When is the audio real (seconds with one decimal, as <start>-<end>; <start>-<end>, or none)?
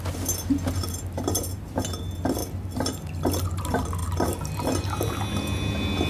0.0-6.1